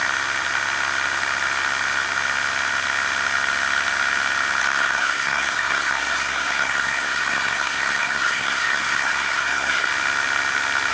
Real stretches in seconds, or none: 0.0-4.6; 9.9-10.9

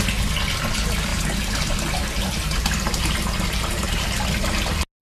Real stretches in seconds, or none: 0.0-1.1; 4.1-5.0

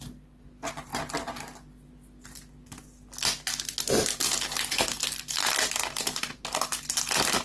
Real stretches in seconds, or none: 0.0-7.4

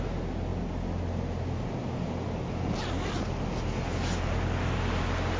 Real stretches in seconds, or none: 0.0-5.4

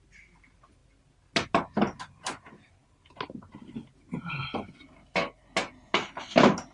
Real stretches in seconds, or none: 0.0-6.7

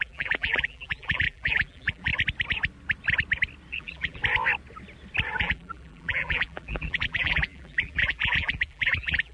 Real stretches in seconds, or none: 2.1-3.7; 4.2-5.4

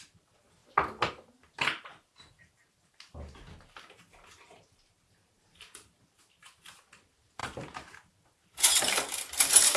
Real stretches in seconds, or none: 0.6-1.3